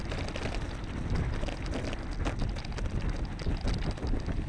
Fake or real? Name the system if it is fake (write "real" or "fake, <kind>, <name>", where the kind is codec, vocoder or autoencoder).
real